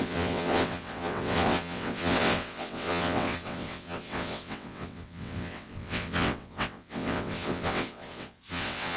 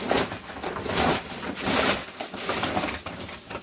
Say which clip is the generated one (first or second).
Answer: first